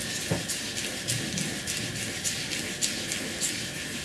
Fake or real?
real